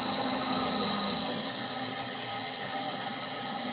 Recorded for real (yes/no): no